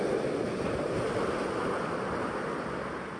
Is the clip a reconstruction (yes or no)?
no